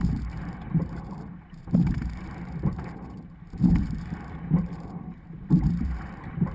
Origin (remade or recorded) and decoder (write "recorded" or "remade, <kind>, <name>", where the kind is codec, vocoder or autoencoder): remade, vocoder, BigVGAN v2